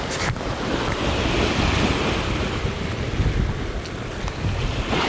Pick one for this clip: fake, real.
real